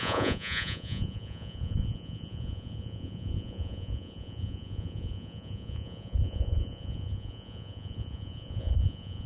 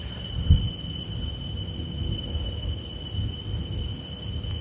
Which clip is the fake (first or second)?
first